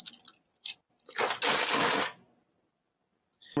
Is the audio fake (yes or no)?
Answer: no